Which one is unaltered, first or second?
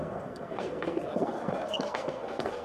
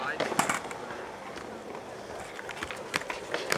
second